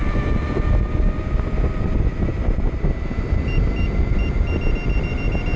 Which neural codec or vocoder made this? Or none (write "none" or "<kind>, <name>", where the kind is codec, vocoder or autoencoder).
none